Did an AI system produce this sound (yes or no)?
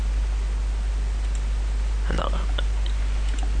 no